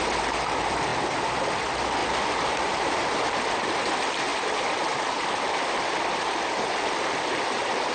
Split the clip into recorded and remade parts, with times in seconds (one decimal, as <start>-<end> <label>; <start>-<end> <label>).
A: 0.0-2.0 recorded; 2.0-3.2 remade; 3.2-4.3 recorded; 4.3-7.1 remade; 7.1-7.9 recorded